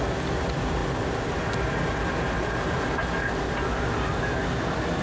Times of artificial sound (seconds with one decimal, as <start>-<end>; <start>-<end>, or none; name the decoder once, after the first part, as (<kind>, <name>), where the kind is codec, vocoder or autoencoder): none